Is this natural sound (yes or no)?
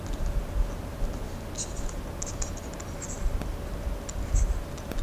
yes